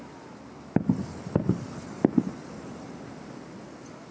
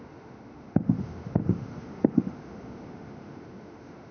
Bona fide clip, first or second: first